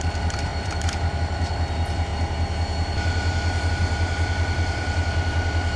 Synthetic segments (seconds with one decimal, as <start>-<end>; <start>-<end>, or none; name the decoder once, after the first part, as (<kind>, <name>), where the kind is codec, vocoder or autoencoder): 0.0-2.1 (vocoder, BigVGAN v2); 3.7-5.8